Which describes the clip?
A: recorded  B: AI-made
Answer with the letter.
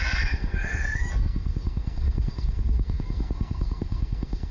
B